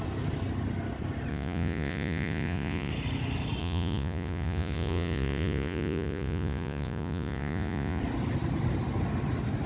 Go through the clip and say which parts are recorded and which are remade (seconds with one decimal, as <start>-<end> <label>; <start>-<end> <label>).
0.0-1.3 recorded; 1.3-2.9 remade; 2.9-3.6 recorded; 3.6-8.0 remade; 8.0-9.7 recorded

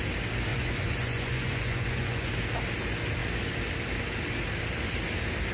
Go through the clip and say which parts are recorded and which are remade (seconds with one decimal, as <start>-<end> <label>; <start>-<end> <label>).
0.0-0.5 recorded; 0.5-2.3 remade; 2.3-5.5 recorded

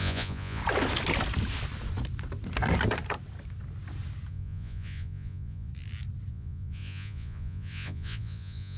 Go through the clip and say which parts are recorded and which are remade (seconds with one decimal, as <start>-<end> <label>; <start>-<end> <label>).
0.0-0.6 remade; 0.6-4.3 recorded; 4.3-5.7 remade; 5.7-6.3 recorded; 6.3-8.8 remade

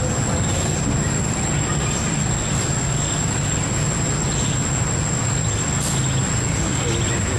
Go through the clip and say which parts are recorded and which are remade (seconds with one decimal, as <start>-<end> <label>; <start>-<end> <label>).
0.0-7.4 recorded

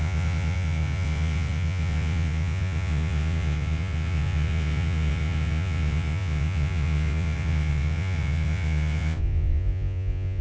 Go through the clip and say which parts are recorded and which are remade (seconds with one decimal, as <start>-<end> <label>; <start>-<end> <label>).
0.0-10.4 remade

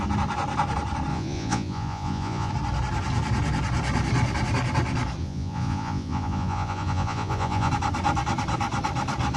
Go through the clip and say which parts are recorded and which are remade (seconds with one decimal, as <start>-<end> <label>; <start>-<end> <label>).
0.0-1.1 recorded; 1.1-2.5 remade; 2.5-5.2 recorded; 5.2-7.7 remade; 7.7-9.4 recorded